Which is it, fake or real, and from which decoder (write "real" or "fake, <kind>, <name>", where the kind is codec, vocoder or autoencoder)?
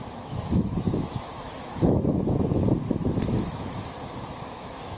fake, autoencoder, DAC-VAE